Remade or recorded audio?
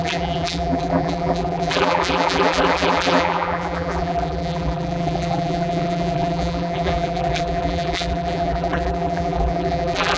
remade